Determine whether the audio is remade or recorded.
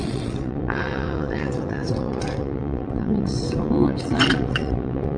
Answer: remade